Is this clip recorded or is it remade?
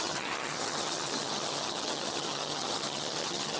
remade